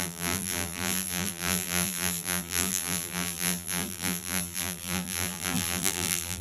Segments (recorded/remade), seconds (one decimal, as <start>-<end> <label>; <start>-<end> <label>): 0.0-6.4 remade